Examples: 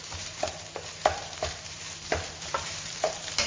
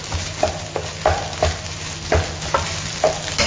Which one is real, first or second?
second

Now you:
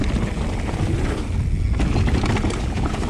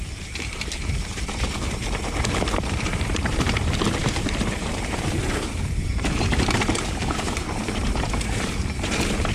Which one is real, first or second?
first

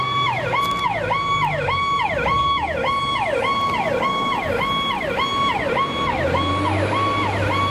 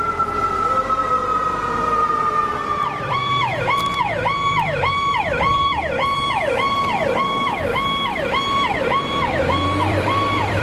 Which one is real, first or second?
first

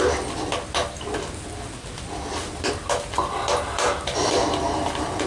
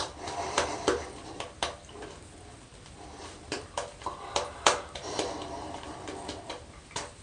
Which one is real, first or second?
first